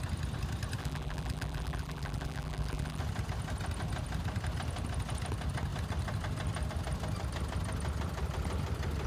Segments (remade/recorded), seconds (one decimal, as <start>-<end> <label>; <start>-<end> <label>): 0.0-0.8 recorded; 0.8-3.0 remade; 3.0-9.1 recorded